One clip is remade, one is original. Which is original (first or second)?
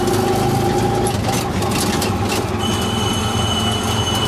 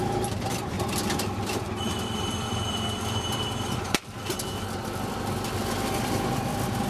first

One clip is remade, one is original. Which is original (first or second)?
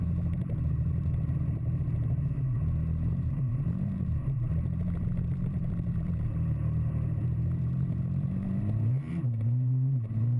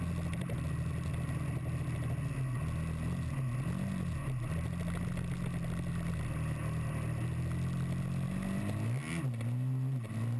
second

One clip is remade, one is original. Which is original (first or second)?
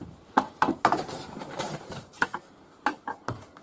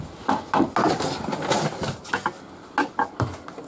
second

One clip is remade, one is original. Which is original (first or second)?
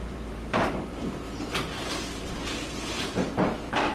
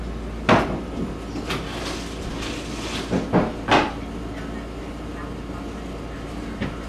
second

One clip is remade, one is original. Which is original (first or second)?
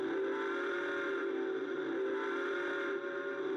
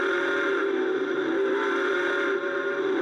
first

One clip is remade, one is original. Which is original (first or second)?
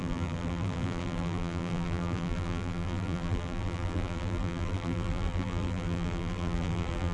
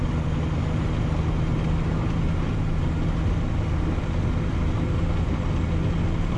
second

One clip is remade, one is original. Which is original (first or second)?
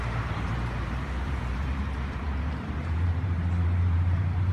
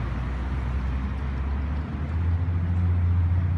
second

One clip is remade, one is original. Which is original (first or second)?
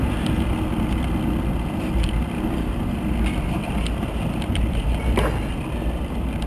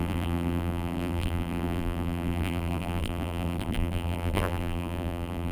first